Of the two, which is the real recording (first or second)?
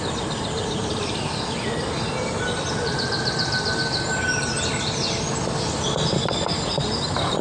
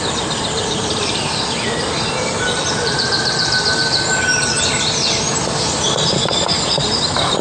first